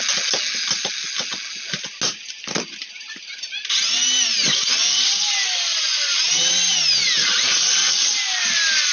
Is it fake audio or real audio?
real